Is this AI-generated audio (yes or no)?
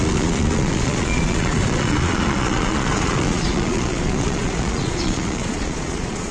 yes